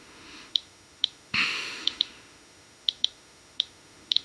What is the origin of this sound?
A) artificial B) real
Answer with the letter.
A